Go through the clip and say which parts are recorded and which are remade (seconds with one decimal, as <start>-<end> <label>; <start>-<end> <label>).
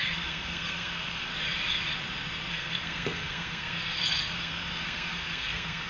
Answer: 0.0-1.3 remade; 1.3-2.5 recorded; 2.5-5.9 remade